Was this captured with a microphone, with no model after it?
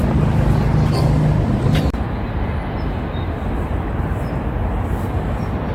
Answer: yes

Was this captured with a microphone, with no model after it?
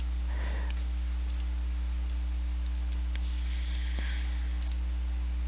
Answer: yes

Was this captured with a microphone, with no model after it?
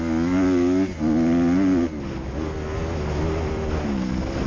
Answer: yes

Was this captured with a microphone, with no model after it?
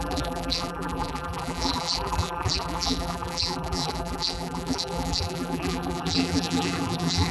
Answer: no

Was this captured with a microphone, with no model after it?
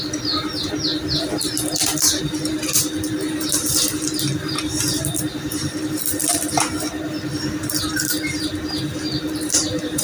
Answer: yes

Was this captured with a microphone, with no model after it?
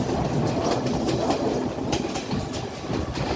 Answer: yes